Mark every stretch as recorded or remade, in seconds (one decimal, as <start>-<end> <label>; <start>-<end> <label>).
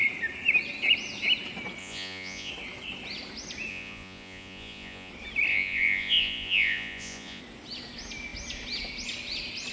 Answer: 0.0-1.8 recorded; 1.8-2.5 remade; 2.5-3.7 recorded; 3.7-5.1 remade; 5.1-5.5 recorded; 5.5-7.4 remade; 7.4-9.7 recorded